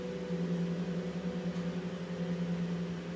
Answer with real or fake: real